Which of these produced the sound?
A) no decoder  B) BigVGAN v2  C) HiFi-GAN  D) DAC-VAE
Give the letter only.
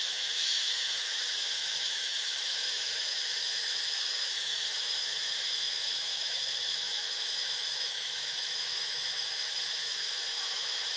D